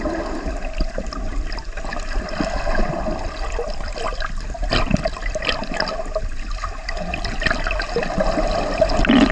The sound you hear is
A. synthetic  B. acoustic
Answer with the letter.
B